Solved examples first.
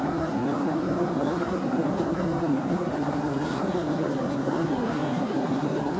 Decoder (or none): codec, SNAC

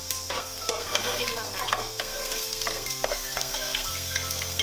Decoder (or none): codec, SNAC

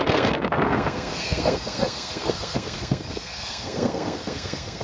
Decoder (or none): codec, SNAC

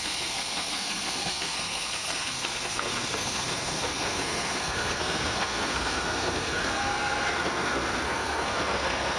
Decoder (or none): codec, SNAC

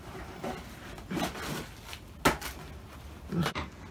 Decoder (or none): none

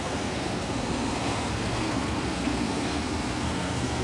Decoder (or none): codec, SNAC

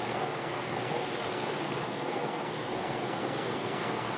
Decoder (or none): codec, SNAC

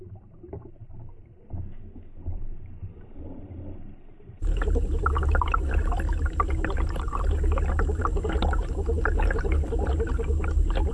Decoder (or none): none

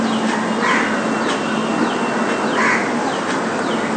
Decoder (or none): none